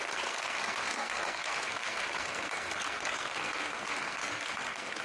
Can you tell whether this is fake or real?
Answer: fake